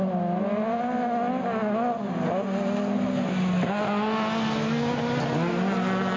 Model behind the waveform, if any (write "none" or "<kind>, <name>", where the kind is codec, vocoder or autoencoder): none